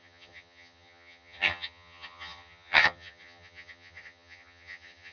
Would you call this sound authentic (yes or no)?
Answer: no